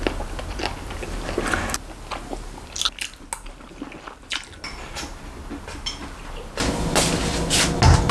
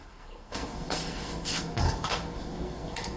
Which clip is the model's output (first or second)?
second